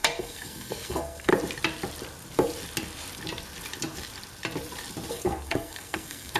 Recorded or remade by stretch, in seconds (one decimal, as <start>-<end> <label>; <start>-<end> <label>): 0.0-1.3 remade; 1.3-5.1 recorded; 5.1-6.4 remade